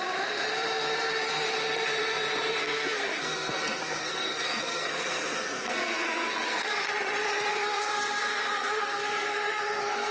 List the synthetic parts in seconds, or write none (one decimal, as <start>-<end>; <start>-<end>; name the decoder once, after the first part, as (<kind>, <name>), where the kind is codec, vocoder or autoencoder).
2.6-6.9 (codec, SNAC); 7.5-10.1